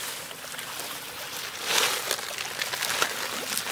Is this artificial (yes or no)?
no